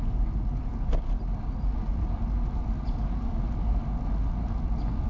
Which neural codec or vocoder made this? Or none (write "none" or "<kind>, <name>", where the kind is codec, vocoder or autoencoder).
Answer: none